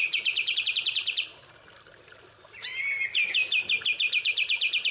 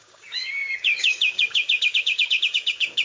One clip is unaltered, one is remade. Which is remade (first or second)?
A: second